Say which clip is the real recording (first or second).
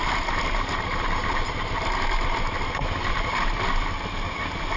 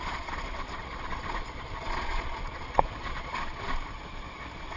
first